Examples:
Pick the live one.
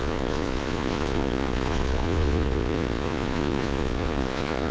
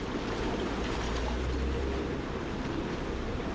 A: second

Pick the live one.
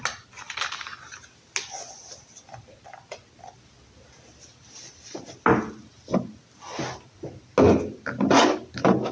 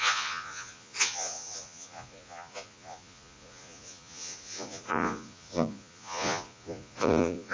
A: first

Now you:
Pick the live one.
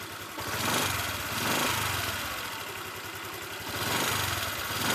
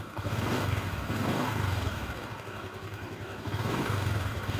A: first